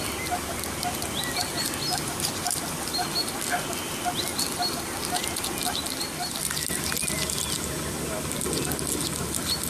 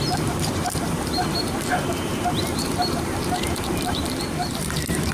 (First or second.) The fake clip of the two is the second